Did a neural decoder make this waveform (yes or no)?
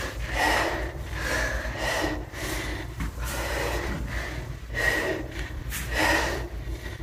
yes